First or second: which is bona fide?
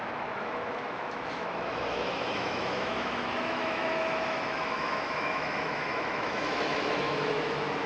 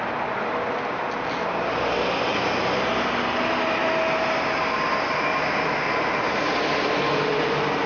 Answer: second